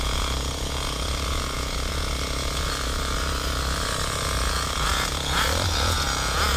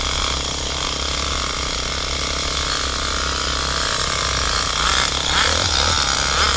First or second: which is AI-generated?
first